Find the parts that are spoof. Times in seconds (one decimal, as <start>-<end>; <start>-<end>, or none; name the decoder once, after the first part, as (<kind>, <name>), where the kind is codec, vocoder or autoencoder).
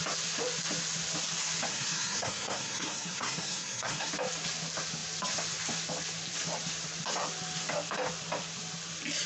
1.7-4.1 (codec, SNAC)